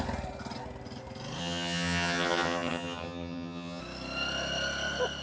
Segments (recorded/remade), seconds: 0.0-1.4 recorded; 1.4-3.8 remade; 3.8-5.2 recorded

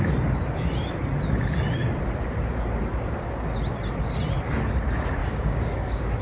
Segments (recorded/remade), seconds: 0.0-5.2 recorded; 5.2-6.2 remade